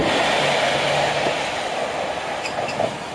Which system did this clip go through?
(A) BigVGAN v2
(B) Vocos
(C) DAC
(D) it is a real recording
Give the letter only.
A